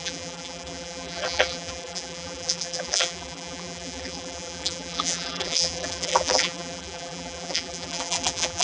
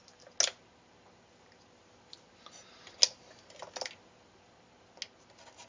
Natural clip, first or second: second